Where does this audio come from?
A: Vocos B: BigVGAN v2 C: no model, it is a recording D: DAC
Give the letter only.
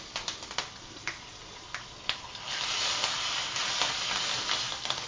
C